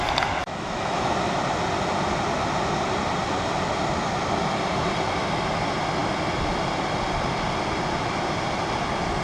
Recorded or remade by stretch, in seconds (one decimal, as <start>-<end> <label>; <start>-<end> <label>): 0.0-0.4 recorded; 0.4-1.1 remade; 1.1-9.2 recorded